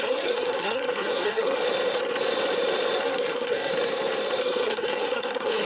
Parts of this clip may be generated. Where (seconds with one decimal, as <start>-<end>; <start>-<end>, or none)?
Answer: 0.0-1.6; 3.0-3.7; 4.4-5.6